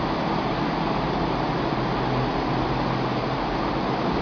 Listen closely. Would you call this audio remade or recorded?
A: recorded